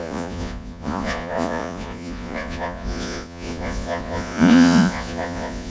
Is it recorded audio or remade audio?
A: remade